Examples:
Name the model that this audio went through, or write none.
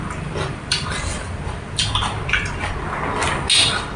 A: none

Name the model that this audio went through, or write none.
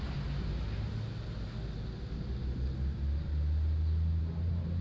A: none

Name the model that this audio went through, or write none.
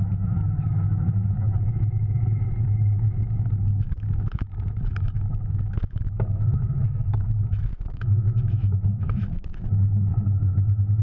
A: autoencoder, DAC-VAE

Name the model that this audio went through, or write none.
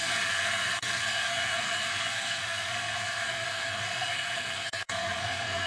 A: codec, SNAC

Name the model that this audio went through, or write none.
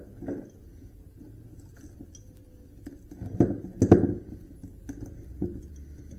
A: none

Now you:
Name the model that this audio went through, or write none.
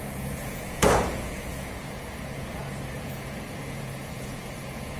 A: vocoder, Vocos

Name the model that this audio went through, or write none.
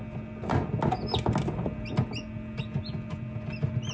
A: none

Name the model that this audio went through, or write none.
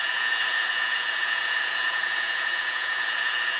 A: vocoder, Vocos